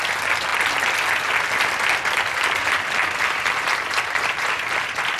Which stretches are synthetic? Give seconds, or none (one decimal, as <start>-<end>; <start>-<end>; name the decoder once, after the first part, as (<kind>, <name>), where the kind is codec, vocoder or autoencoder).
none